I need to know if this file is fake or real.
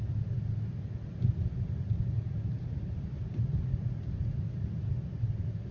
real